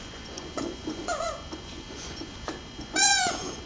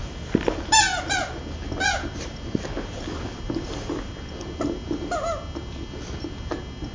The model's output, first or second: first